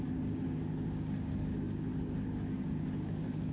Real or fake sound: fake